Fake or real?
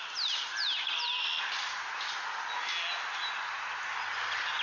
real